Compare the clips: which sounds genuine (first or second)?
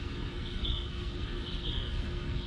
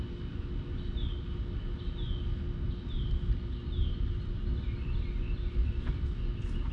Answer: second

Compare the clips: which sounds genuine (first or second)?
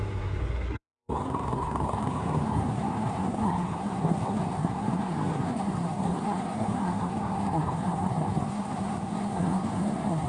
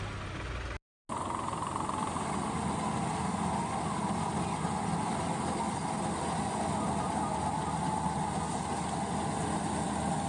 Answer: second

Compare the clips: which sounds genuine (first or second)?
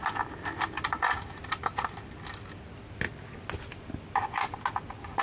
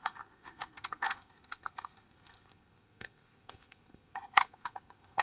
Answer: first